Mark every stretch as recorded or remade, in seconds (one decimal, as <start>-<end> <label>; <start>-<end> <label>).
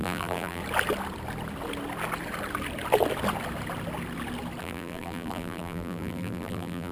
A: 0.0-0.6 remade; 0.6-4.6 recorded; 4.6-6.9 remade